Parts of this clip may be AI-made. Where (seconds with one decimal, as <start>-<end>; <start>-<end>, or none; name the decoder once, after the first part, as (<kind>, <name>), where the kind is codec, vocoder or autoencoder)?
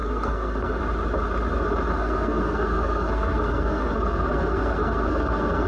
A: 0.0-0.8 (codec, SNAC); 2.0-5.7